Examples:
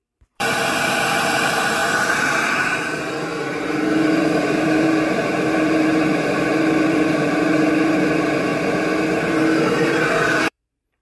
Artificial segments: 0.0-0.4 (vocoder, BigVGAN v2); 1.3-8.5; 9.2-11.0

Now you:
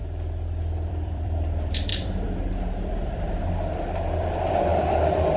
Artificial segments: 0.9-5.4 (vocoder, BigVGAN v2)

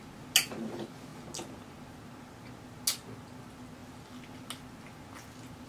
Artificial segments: none

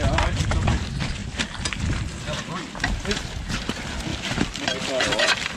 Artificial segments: 4.1-5.6 (vocoder, BigVGAN v2)